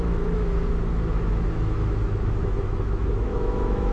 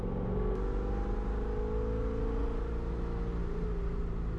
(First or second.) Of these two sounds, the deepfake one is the first